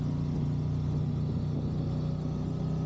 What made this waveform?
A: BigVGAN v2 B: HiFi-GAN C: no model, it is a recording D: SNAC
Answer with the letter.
C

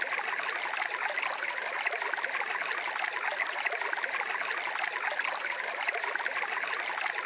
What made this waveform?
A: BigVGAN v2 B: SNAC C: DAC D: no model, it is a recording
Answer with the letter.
D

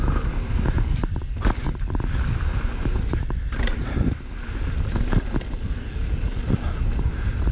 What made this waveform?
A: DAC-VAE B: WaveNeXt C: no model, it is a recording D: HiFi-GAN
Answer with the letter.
C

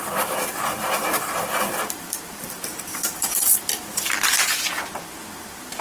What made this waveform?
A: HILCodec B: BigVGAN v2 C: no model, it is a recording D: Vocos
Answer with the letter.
B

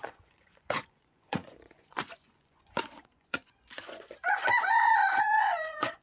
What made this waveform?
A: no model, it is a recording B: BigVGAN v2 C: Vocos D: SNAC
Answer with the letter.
C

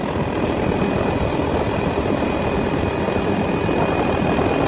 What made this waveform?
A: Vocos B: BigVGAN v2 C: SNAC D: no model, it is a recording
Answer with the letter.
D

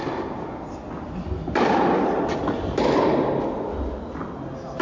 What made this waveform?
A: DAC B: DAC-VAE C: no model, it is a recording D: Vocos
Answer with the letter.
C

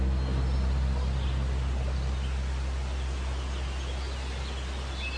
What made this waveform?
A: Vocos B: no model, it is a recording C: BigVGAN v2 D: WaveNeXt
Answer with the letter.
B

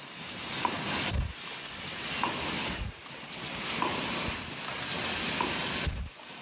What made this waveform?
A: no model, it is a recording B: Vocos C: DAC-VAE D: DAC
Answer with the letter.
A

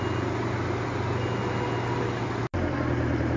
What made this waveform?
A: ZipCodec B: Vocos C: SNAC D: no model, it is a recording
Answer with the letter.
D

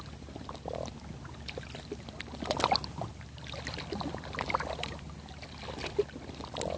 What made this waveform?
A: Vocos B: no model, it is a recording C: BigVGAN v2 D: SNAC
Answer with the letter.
B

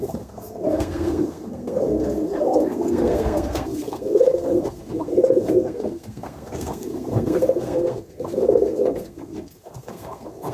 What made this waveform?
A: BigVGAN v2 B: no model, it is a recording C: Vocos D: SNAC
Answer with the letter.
D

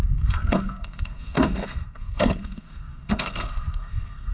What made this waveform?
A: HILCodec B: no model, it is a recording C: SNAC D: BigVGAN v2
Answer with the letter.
C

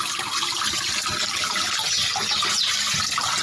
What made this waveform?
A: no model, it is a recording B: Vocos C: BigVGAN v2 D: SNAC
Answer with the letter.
A